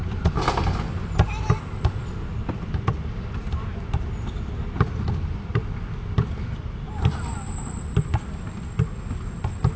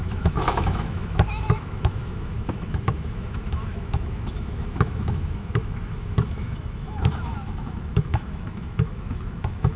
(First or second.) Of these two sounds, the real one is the first